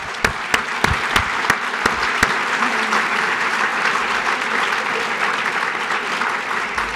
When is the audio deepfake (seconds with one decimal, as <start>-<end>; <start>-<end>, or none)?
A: 2.6-3.7; 6.6-7.0